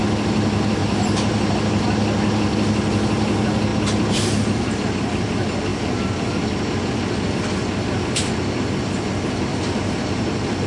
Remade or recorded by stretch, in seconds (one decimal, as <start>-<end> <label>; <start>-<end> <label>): 0.0-0.8 recorded; 0.8-1.6 remade; 1.6-9.5 recorded; 9.5-10.7 remade